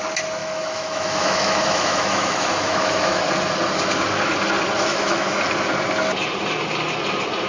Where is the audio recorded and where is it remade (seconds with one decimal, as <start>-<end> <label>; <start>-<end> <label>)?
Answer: 0.0-0.4 recorded; 0.4-3.2 remade; 3.2-4.9 recorded; 4.9-5.4 remade; 5.4-7.5 recorded